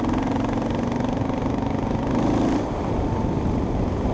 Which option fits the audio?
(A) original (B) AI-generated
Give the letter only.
A